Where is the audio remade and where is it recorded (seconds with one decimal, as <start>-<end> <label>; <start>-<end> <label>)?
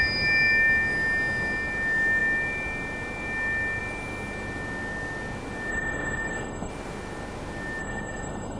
0.0-5.7 recorded; 5.7-6.7 remade; 6.7-7.8 recorded; 7.8-8.6 remade